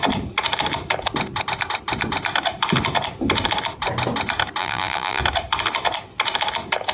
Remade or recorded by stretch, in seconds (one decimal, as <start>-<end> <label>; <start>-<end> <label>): 0.0-4.6 recorded; 4.6-5.2 remade; 5.2-6.9 recorded